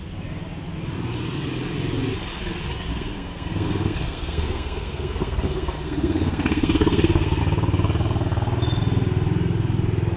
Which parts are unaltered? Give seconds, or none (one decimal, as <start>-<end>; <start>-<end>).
0.0-2.9; 7.4-10.2